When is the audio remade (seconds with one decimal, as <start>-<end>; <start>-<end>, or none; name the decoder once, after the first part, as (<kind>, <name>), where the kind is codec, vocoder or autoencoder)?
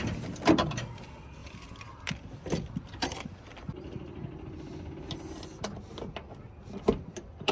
1.4-5.4 (vocoder, BigVGAN v2); 6.9-7.5